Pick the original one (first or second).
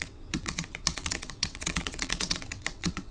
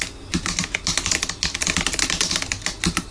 second